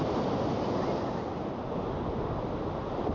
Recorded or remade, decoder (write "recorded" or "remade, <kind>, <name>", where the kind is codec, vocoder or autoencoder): recorded